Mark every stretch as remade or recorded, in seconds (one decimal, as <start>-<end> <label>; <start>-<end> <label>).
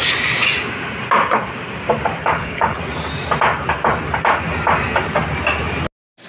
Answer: 0.0-2.2 recorded; 2.2-2.8 remade; 2.8-6.3 recorded